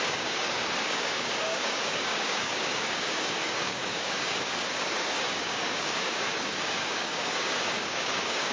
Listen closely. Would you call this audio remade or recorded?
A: remade